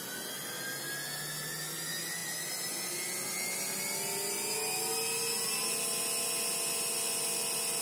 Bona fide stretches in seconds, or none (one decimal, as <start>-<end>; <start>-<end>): 0.0-7.8